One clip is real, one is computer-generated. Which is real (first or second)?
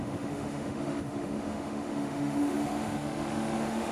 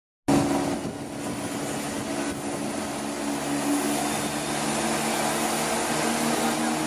second